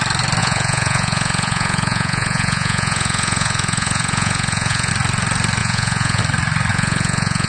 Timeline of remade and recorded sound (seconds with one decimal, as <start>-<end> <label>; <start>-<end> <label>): 0.0-0.4 recorded; 0.4-4.9 remade; 4.9-5.6 recorded; 5.6-6.2 remade; 6.2-6.7 recorded; 6.7-7.5 remade